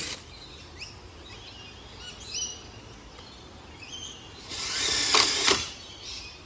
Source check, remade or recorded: recorded